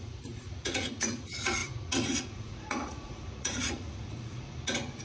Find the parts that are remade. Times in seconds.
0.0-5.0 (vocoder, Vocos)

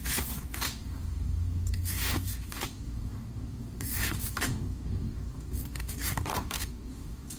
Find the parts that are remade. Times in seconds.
0.0-7.4 (codec, DAC)

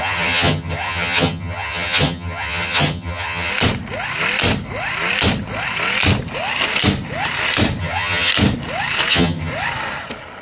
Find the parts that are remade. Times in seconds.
0.0-3.5 (vocoder, HiFi-GAN); 7.8-8.3; 9.1-9.5

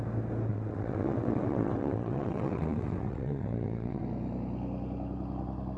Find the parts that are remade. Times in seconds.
0.5-4.0 (vocoder, WaveNeXt)

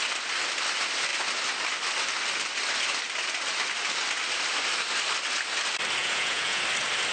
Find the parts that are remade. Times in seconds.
6.0-6.6 (vocoder, Vocos)

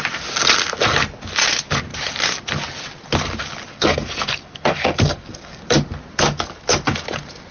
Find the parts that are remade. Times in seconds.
3.7-5.6 (codec, SNAC)

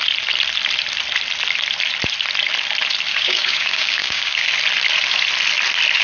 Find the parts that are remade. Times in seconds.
3.1-4.5 (codec, DAC)

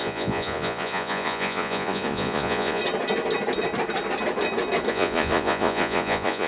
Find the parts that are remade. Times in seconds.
0.0-2.8 (vocoder, Vocos); 4.9-6.5